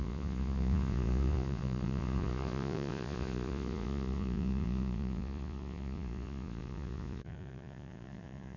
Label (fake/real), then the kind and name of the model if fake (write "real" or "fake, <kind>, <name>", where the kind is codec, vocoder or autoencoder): fake, vocoder, Vocos